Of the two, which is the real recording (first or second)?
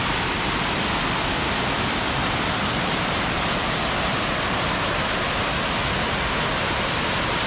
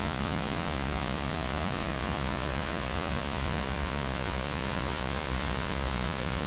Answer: first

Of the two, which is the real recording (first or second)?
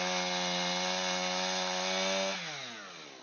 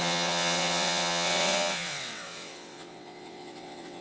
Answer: first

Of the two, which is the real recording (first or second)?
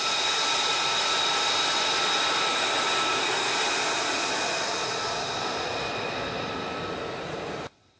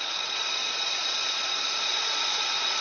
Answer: first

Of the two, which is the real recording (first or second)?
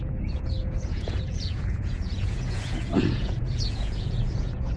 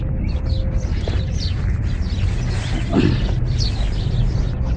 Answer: second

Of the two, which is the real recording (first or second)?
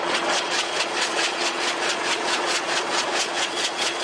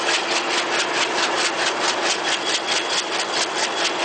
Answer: second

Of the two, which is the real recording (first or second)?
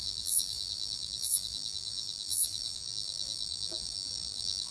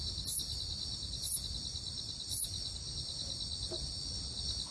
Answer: second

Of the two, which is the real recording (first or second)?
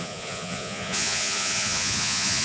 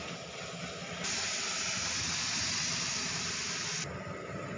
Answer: second